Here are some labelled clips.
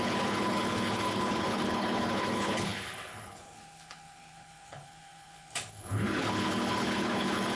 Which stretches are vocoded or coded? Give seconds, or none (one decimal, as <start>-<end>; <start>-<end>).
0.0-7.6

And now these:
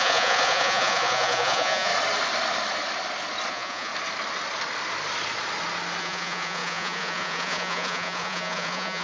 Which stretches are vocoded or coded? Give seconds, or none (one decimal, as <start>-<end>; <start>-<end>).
0.0-1.9; 3.5-3.9; 6.0-9.0

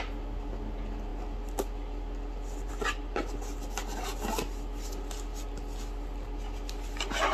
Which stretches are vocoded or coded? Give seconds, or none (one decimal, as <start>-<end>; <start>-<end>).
none